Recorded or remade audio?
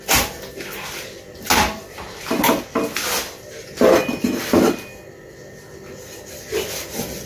recorded